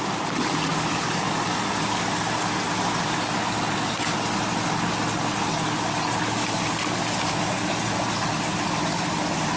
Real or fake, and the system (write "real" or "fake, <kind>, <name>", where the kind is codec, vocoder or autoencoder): real